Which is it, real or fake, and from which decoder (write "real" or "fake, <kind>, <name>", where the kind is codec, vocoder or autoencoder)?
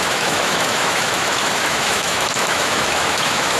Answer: fake, autoencoder, DAC-VAE